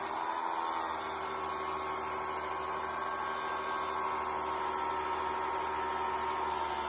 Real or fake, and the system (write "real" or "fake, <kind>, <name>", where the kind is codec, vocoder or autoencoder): real